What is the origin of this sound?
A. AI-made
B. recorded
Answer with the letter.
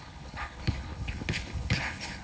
A